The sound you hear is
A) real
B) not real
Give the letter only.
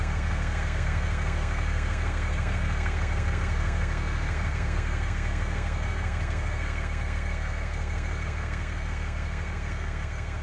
B